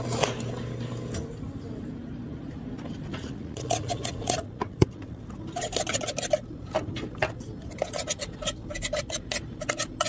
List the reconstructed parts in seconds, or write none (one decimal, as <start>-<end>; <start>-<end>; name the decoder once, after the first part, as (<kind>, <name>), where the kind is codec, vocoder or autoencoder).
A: 3.1-5.2 (vocoder, Vocos)

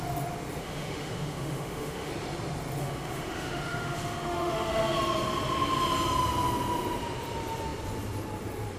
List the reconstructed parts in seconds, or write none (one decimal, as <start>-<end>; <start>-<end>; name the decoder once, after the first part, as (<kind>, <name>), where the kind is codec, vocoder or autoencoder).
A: 0.6-2.1 (autoencoder, DAC-VAE); 2.8-4.7

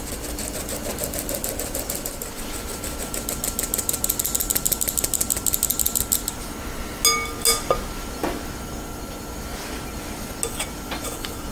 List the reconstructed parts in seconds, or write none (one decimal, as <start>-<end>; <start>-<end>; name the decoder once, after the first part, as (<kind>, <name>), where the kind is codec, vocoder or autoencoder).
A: none

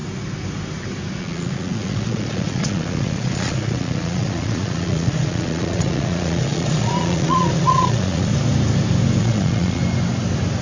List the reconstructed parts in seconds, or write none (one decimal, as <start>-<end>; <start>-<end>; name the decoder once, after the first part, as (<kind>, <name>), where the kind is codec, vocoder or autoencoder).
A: 1.2-8.3 (vocoder, Vocos); 9.2-9.8